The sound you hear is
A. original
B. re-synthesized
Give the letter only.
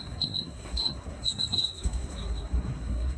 B